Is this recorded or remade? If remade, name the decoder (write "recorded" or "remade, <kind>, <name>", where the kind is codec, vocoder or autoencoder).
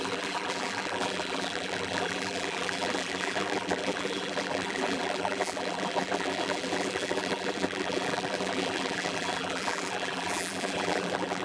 remade, vocoder, BigVGAN v2